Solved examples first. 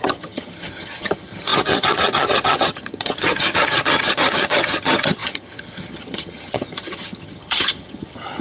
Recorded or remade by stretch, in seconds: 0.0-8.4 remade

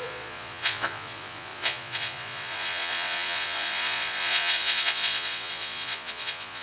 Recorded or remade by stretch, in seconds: 0.0-6.6 remade

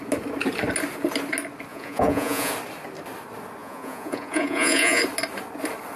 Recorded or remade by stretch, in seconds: 0.0-1.7 recorded; 1.7-2.5 remade; 2.5-3.6 recorded; 3.6-5.0 remade; 5.0-6.0 recorded

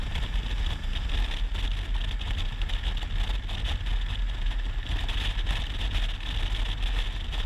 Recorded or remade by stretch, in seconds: 0.0-7.5 recorded

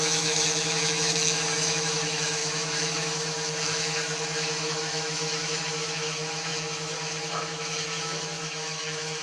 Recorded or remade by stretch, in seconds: 0.0-9.2 remade

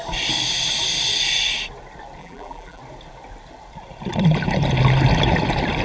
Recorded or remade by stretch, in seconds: 0.0-2.2 recorded; 2.2-2.8 remade; 2.8-5.8 recorded

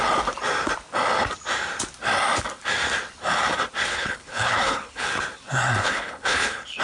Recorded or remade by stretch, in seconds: 0.0-3.9 recorded; 3.9-5.1 remade; 5.1-5.8 recorded; 5.8-6.8 remade

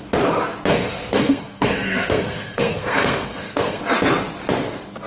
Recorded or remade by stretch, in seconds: 0.0-0.7 recorded; 0.7-3.8 remade; 3.8-5.1 recorded